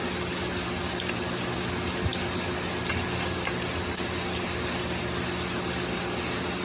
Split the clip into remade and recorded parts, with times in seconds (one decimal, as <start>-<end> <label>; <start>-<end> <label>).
0.0-6.6 recorded